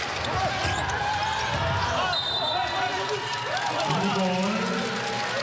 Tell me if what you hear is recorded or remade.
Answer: recorded